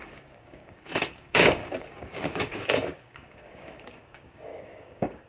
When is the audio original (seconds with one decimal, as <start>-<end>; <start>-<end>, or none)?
none

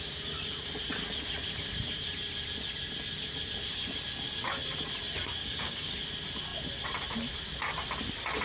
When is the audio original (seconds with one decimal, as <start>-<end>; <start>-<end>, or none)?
0.0-5.4; 5.9-8.4

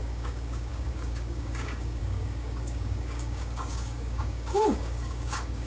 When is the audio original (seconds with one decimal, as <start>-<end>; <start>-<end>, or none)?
none